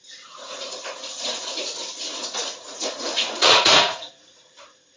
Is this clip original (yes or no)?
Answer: no